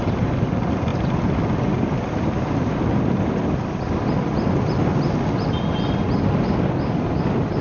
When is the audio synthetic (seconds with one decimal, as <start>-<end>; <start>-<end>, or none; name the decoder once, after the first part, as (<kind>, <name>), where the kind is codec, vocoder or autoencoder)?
none